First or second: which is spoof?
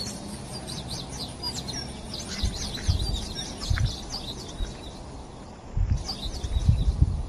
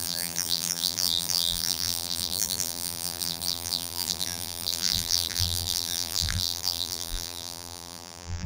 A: second